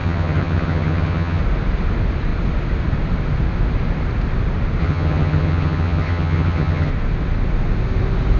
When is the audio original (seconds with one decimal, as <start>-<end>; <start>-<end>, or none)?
1.4-4.8; 6.9-8.4